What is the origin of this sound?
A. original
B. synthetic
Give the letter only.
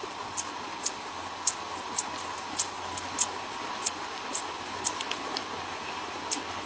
A